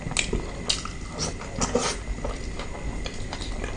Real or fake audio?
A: real